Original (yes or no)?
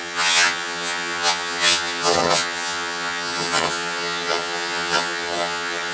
no